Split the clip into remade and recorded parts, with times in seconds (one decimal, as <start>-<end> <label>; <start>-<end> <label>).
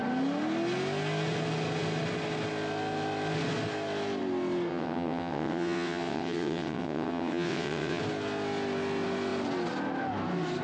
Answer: 0.0-4.7 recorded; 4.7-8.0 remade; 8.0-10.6 recorded